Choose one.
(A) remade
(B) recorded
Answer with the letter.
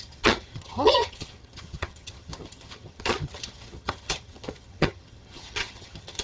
A